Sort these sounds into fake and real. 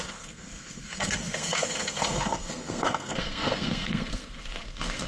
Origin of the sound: fake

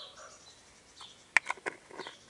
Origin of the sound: real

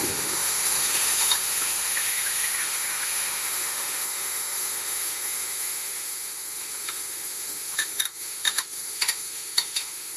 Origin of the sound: fake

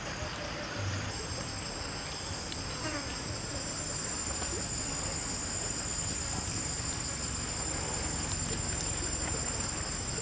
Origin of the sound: real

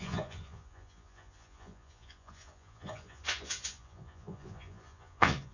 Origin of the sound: fake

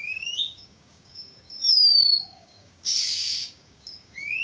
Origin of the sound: fake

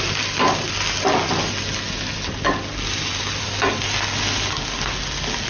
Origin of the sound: real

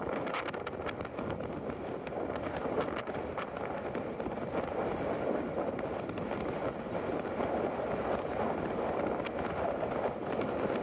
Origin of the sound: real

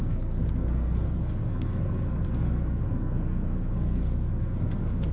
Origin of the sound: fake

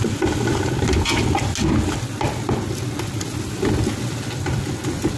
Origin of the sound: real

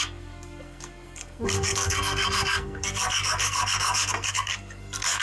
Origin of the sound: fake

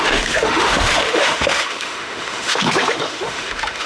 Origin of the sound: fake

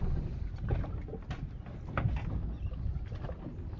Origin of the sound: real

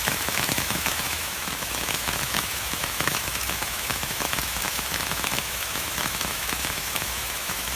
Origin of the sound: fake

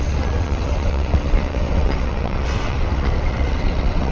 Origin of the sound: fake